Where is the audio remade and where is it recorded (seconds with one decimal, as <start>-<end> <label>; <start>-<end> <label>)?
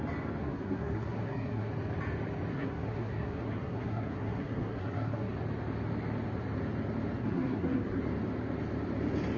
0.0-0.4 recorded; 0.4-1.7 remade; 1.7-2.5 recorded; 2.5-5.3 remade; 5.3-7.2 recorded; 7.2-8.0 remade; 8.0-9.4 recorded